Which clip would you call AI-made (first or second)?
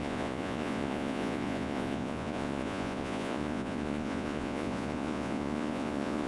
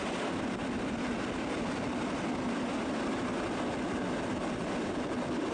first